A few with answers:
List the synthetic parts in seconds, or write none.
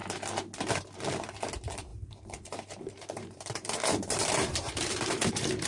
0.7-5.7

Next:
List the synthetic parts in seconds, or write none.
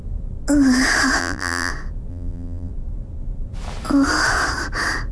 1.2-1.7; 2.1-2.7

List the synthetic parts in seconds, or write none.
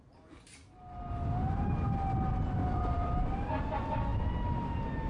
2.6-3.6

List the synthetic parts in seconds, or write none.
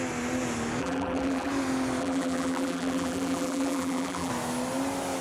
0.8-1.5; 2.0-4.3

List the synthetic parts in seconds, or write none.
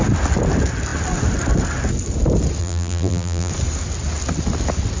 2.6-3.5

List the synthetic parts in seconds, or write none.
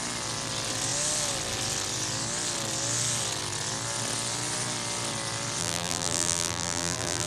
5.6-7.3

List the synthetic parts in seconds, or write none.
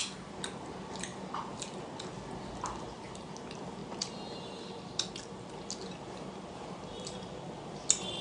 none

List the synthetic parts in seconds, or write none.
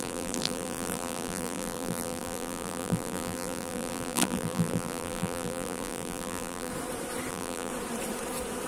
0.0-6.7; 7.3-7.7